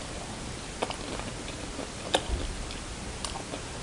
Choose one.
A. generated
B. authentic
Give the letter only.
B